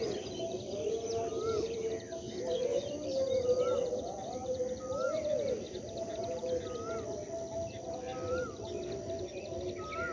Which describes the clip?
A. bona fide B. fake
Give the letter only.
A